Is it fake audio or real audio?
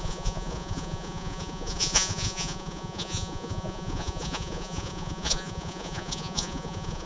fake